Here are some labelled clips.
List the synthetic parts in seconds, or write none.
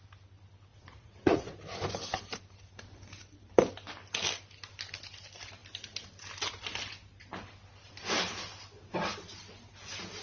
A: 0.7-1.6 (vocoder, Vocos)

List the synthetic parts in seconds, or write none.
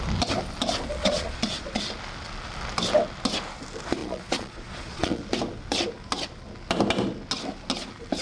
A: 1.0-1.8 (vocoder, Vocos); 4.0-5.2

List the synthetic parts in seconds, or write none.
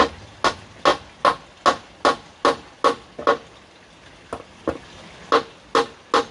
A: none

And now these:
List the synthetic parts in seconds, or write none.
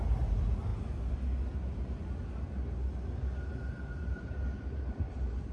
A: 0.0-0.7 (vocoder, BigVGAN v2); 4.0-5.5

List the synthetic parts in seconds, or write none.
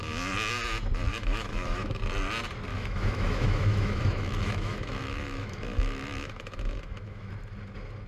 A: 1.1-2.0 (autoencoder, DAC-VAE); 2.7-7.3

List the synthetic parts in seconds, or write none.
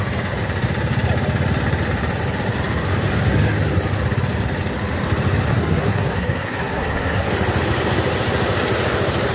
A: 5.5-7.3 (codec, SNAC)